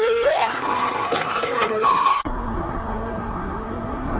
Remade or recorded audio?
remade